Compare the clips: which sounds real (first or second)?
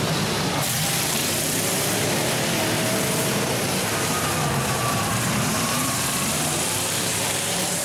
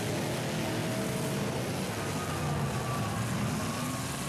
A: second